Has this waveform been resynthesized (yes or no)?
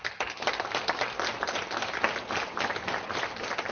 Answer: no